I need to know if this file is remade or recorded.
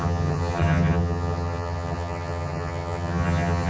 remade